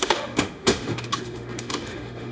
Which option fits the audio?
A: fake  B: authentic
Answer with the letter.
A